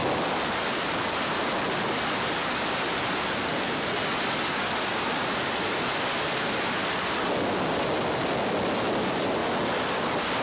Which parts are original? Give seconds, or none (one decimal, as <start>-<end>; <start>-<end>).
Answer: 0.0-10.4